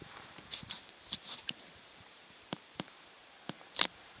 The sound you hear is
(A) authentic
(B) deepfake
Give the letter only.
B